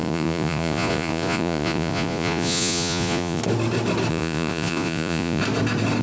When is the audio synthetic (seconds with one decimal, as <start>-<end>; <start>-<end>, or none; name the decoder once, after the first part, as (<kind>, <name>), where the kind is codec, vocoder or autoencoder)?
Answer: 0.0-3.4 (vocoder, Vocos); 4.1-5.4